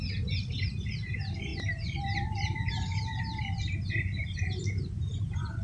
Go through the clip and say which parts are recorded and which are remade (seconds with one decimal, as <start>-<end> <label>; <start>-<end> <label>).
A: 0.0-5.6 remade